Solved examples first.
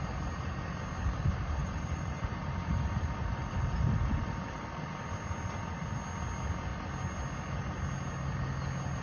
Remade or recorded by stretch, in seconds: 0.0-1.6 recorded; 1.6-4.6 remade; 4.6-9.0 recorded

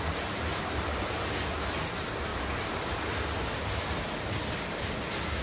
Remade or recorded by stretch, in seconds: 0.0-5.4 recorded

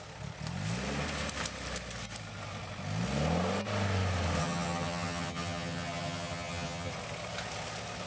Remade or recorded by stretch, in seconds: 0.0-4.4 recorded; 4.4-6.9 remade; 6.9-8.1 recorded

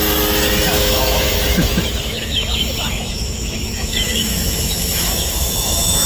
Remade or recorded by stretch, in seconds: 0.0-0.6 recorded; 0.6-6.1 remade

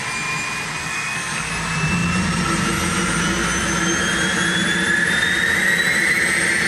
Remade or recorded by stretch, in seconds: 0.0-0.8 recorded; 0.8-1.5 remade; 1.5-6.7 recorded

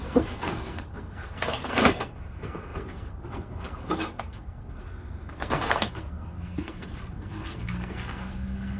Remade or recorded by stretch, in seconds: 0.0-8.8 remade

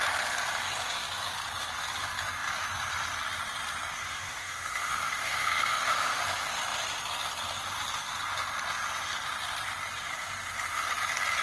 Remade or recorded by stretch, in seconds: 0.0-4.0 recorded; 4.0-6.2 remade; 6.2-11.4 recorded